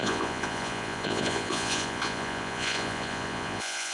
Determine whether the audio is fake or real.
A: fake